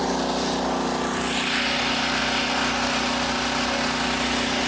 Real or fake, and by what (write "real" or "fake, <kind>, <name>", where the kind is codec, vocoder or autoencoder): real